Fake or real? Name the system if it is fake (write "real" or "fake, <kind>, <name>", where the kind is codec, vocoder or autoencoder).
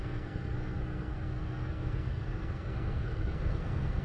fake, codec, SNAC